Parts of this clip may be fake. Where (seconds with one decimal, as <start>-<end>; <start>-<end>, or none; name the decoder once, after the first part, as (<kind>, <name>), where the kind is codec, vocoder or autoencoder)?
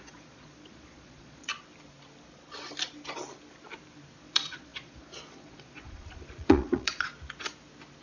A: 0.0-1.5 (vocoder, Vocos); 4.2-7.1